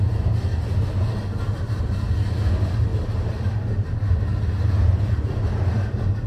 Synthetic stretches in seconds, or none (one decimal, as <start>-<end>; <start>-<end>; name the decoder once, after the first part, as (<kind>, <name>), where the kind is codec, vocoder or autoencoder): none